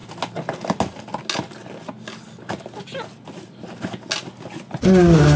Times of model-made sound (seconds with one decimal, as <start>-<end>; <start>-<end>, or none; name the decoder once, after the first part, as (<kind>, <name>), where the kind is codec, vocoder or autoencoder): none